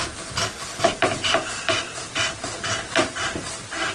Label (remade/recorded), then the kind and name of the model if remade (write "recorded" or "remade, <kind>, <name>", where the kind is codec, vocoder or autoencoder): recorded